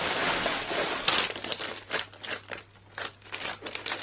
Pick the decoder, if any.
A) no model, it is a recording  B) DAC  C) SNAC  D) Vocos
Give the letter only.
A